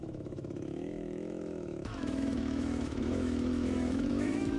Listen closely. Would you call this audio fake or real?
fake